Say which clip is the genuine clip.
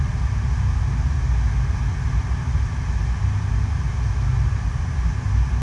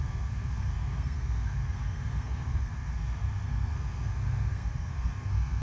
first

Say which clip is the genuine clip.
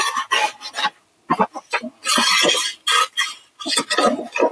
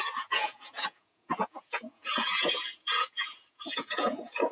first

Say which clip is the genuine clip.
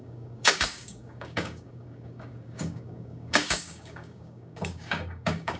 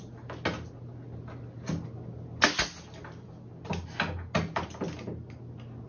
second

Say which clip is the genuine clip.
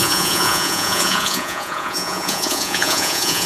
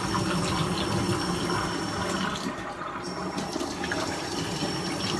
second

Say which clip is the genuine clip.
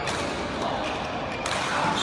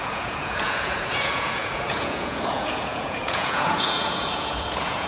first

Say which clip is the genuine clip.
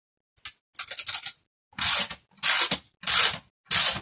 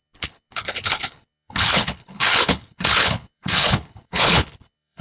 first